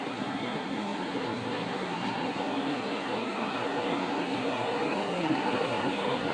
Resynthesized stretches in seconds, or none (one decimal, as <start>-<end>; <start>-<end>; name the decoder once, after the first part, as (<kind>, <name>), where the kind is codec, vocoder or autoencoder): 0.0-6.3 (codec, SNAC)